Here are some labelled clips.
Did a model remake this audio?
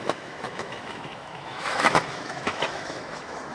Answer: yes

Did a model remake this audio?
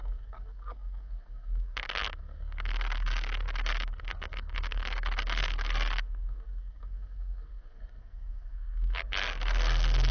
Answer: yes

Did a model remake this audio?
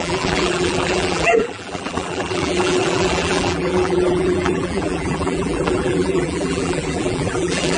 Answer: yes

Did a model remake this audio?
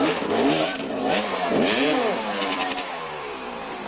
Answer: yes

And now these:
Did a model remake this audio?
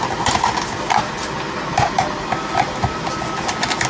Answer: no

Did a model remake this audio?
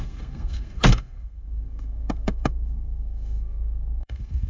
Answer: yes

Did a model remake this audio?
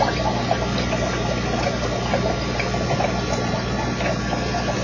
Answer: no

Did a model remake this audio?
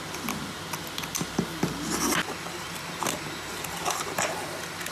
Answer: no